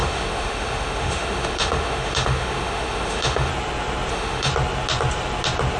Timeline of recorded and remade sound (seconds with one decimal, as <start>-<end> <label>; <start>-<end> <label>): 0.0-3.5 remade; 3.5-4.1 recorded; 4.1-4.5 remade; 4.5-5.8 recorded